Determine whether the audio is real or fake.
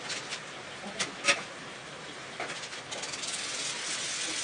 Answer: real